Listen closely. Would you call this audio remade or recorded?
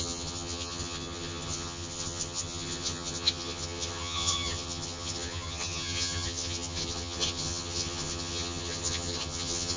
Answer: remade